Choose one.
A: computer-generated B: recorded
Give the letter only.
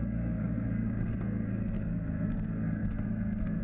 A